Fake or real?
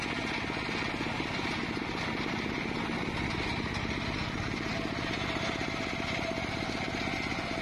real